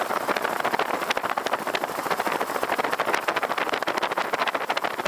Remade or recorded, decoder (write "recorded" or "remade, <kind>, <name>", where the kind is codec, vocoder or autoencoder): recorded